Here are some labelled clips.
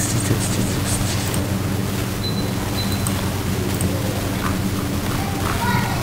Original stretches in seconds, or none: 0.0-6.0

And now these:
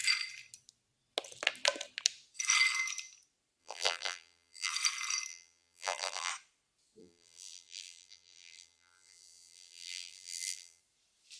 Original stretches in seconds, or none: 0.0-3.6; 4.7-5.3; 6.3-7.0; 10.8-11.4

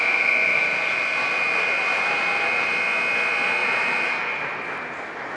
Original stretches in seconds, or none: 0.0-0.5; 2.8-3.6; 4.2-5.4

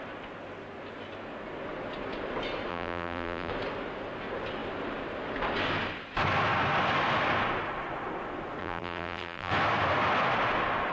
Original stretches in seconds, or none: 0.0-2.7; 3.5-8.6; 9.5-10.9

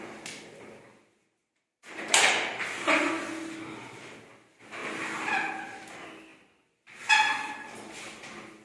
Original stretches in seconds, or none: 0.0-1.4; 3.1-4.8; 5.5-8.6